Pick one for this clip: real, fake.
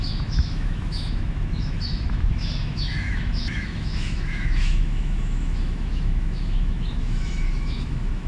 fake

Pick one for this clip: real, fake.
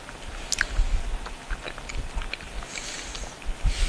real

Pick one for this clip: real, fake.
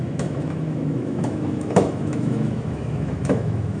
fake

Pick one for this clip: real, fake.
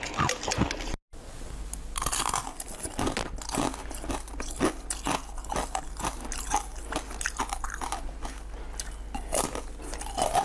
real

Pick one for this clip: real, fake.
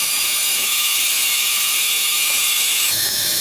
fake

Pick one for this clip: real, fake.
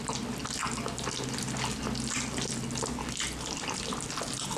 real